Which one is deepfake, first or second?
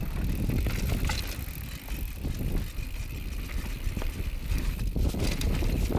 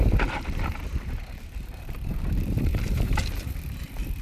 second